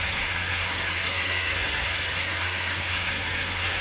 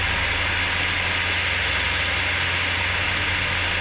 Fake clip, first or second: first